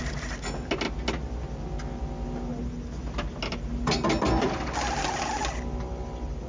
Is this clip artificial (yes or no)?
no